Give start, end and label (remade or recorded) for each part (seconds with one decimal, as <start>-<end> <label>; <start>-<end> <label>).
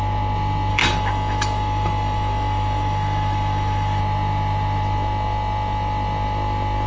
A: 0.0-0.7 recorded; 0.7-4.0 remade; 4.0-6.9 recorded